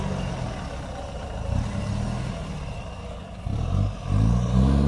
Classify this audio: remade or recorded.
recorded